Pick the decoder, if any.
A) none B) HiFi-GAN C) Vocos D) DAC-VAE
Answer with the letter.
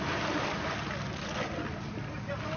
A